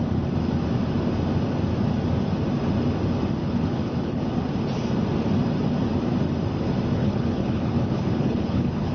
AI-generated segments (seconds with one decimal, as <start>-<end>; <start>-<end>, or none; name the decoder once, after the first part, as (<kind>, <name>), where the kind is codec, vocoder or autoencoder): 3.4-4.2 (codec, HILCodec); 7.0-8.9